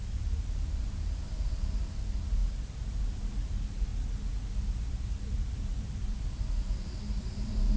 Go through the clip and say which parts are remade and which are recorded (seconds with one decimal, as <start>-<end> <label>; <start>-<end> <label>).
0.0-2.4 remade; 2.4-3.0 recorded; 3.0-3.9 remade; 3.9-4.9 recorded; 4.9-7.8 remade